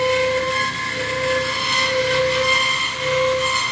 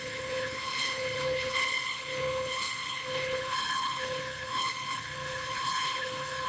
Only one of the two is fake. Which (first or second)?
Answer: second